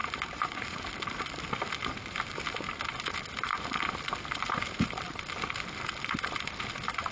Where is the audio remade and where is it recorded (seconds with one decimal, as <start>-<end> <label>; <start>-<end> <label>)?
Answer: 0.0-0.8 remade; 0.8-7.1 recorded